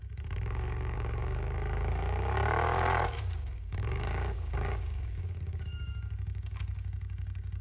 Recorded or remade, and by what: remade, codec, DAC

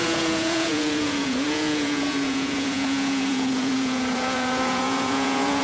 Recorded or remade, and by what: remade, vocoder, Vocos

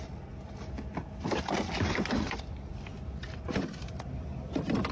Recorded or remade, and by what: recorded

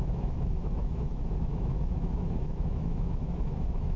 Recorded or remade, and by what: remade, autoencoder, DAC-VAE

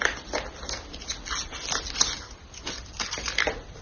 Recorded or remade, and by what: recorded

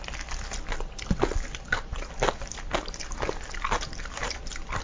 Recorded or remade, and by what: recorded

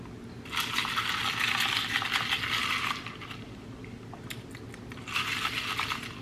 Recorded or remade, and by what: recorded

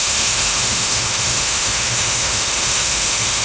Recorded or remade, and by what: remade, autoencoder, DAC-VAE